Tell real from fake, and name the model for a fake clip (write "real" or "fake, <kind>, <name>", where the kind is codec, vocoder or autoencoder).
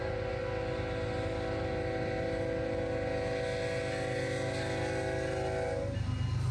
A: real